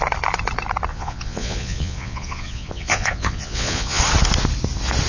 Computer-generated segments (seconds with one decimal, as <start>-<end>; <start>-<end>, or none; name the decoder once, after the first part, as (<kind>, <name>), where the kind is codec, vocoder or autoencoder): 0.9-4.0 (vocoder, Vocos)